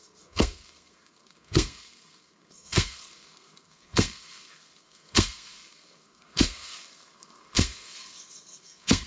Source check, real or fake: fake